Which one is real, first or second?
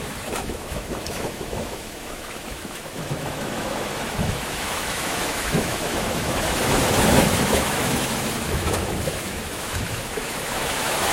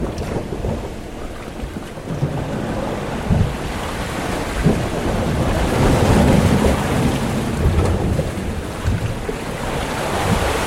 second